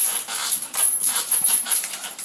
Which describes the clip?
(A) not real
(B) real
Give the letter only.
A